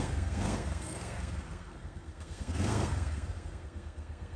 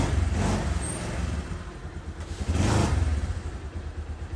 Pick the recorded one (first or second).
second